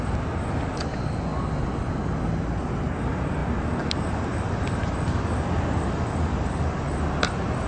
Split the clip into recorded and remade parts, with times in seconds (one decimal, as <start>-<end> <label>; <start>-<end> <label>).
0.0-7.7 recorded